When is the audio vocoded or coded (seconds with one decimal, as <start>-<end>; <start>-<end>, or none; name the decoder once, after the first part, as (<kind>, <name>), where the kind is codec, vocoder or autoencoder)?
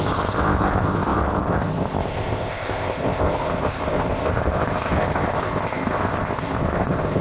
0.0-7.2 (codec, ZipCodec)